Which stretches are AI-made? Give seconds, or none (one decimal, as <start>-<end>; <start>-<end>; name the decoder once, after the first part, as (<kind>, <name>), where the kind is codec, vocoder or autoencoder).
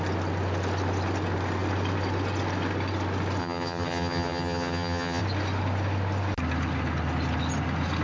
3.4-5.2 (vocoder, HiFi-GAN)